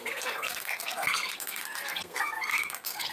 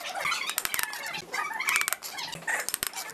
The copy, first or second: first